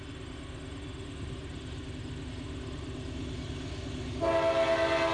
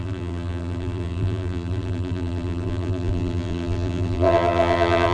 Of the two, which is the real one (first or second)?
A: first